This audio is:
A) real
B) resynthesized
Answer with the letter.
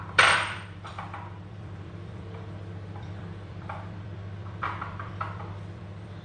B